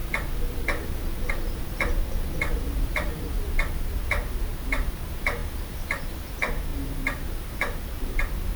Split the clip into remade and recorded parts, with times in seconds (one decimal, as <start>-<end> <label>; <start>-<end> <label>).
0.0-8.6 remade